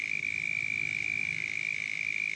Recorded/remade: recorded